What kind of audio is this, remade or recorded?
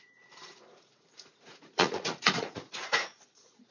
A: remade